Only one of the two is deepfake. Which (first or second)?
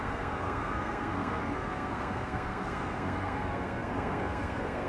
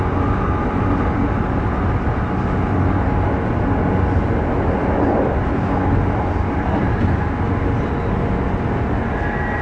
first